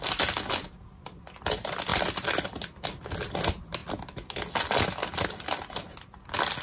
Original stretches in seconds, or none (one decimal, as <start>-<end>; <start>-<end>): 0.0-6.6